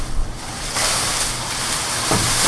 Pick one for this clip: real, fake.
real